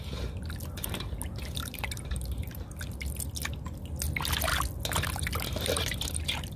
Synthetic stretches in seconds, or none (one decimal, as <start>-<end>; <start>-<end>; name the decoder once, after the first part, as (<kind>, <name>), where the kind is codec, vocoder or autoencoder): 1.6-2.1 (vocoder, BigVGAN v2)